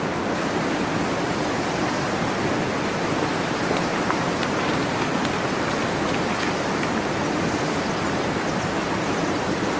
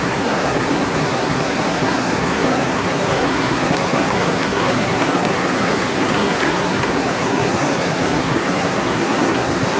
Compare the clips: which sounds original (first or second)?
first